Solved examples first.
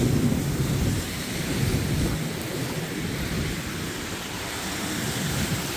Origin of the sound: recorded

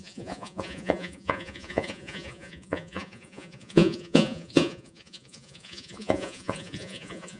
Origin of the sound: remade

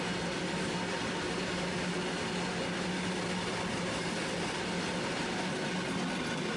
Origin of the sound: recorded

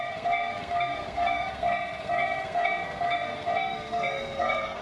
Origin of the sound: remade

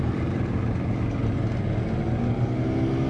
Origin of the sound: recorded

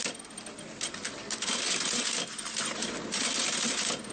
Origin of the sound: recorded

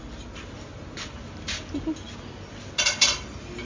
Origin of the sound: recorded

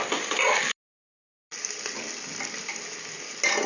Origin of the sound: recorded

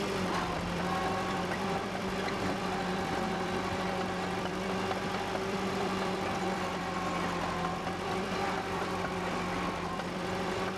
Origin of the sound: remade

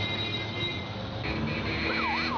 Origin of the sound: recorded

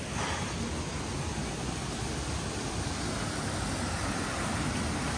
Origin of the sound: recorded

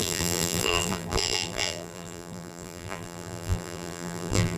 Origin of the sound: remade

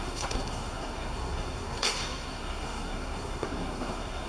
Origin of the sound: remade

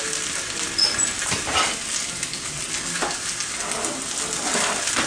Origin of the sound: recorded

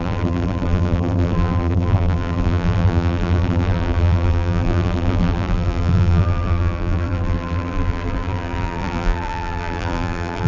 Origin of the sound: remade